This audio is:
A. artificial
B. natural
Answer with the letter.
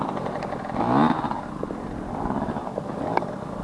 B